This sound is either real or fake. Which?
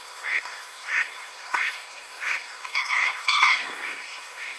fake